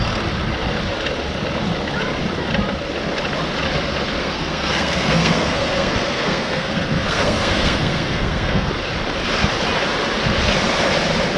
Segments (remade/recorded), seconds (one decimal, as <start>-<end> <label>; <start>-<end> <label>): 0.0-4.2 recorded; 4.2-8.7 remade; 8.7-11.4 recorded